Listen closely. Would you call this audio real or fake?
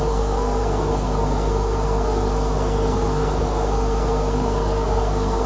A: fake